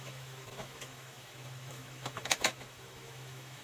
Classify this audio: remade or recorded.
remade